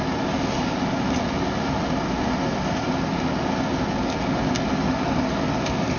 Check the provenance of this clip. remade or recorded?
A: recorded